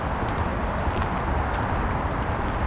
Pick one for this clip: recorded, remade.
recorded